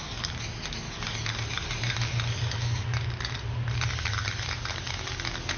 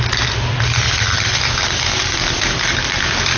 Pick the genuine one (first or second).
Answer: first